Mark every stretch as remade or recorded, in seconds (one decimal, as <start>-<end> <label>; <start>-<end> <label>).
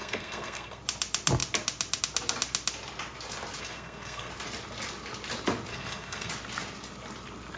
0.0-0.8 remade; 0.8-3.6 recorded; 3.6-4.3 remade; 4.3-5.7 recorded; 5.7-6.3 remade; 6.3-7.6 recorded